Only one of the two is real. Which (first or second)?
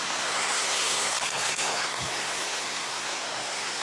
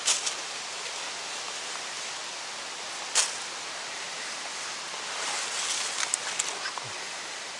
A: second